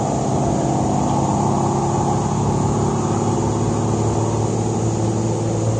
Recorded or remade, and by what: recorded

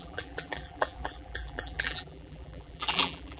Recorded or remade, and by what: remade, vocoder, BigVGAN v2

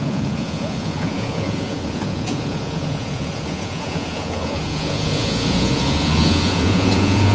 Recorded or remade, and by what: remade, vocoder, Vocos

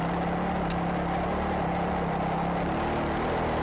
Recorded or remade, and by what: recorded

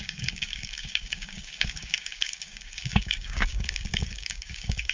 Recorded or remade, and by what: remade, codec, DAC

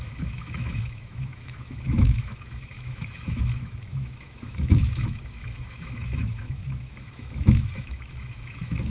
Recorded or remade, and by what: remade, autoencoder, DAC-VAE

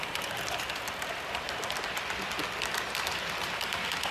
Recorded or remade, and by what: recorded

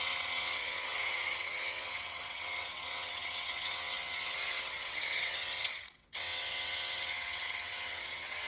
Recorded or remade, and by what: remade, vocoder, WaveNeXt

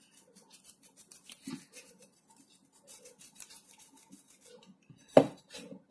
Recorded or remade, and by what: recorded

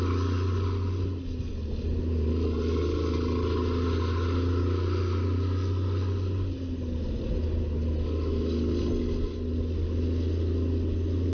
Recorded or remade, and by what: recorded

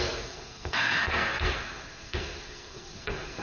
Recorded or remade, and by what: remade, codec, SNAC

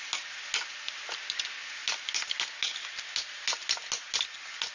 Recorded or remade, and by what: recorded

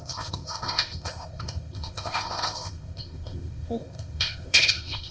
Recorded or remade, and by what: remade, codec, ZipCodec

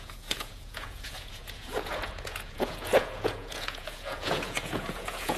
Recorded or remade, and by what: remade, vocoder, Vocos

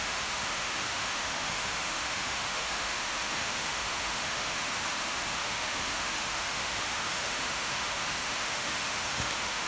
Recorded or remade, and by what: remade, autoencoder, DAC-VAE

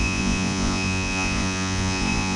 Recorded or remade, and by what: remade, vocoder, Vocos